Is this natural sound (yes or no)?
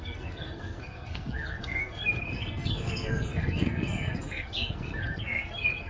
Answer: no